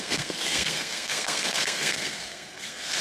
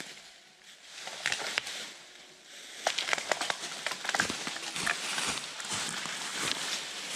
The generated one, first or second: first